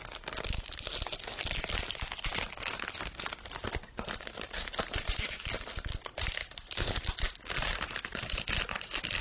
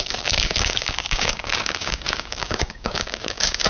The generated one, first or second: second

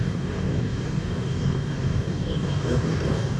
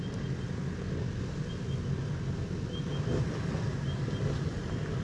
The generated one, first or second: first